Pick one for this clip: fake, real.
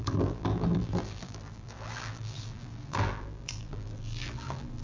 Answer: fake